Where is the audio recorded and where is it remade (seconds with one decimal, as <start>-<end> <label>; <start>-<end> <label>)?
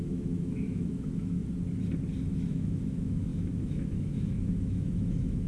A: 0.0-1.4 remade; 1.4-2.3 recorded; 2.3-5.5 remade